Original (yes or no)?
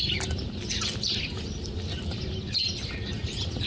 yes